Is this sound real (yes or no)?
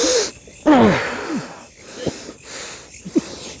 yes